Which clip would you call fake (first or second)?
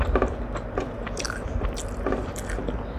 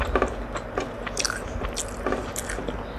first